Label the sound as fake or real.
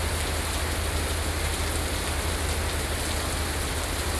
real